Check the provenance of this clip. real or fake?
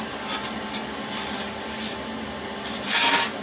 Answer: real